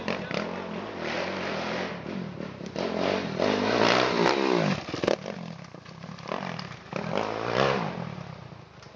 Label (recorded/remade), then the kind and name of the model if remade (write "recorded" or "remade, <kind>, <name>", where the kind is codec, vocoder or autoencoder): recorded